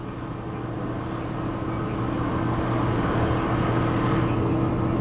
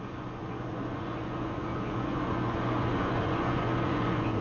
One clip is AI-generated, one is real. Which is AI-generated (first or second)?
second